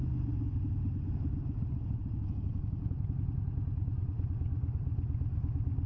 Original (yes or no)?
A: yes